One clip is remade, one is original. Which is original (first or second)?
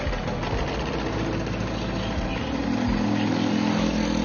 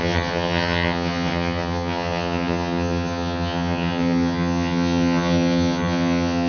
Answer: first